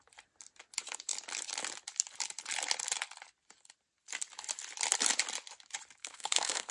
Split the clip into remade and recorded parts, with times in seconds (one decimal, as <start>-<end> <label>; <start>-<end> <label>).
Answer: 0.0-6.0 recorded; 6.0-6.7 remade